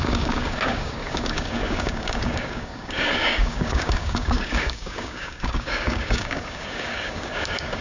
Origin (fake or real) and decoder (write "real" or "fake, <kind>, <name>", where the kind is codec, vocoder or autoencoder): fake, codec, DAC